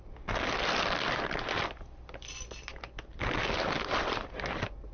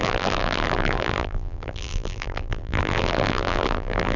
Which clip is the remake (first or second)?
second